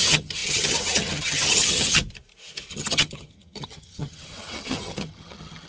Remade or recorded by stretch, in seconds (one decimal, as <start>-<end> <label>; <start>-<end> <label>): 0.0-2.0 remade; 2.0-2.7 recorded; 2.7-5.7 remade